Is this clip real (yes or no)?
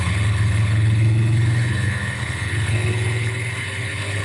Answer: no